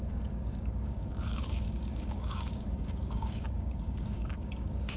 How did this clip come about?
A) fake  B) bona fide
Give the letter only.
A